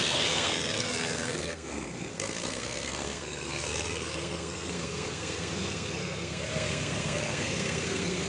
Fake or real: fake